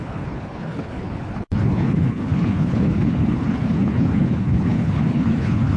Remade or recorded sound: remade